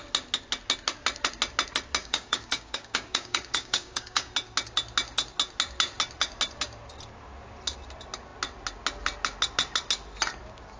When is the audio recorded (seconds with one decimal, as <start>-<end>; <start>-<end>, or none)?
0.0-2.0; 4.3-10.8